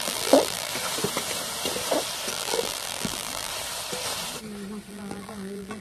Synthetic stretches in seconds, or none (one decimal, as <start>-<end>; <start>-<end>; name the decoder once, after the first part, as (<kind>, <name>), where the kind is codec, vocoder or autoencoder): 0.0-0.7 (vocoder, BigVGAN v2); 2.3-3.5; 4.9-5.8